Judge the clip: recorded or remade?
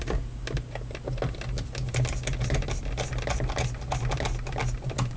recorded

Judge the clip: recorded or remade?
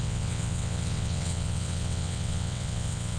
remade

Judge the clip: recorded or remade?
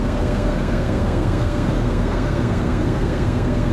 remade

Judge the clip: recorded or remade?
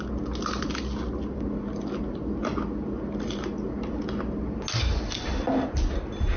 recorded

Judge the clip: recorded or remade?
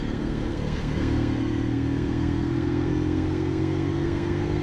remade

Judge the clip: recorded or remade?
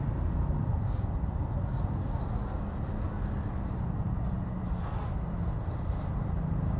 recorded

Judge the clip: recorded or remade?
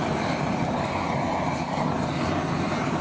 recorded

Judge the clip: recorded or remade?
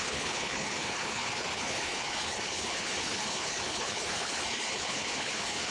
remade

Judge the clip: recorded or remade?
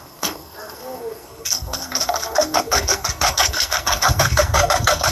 remade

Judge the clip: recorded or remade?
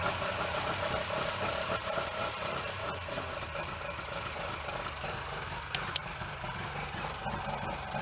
remade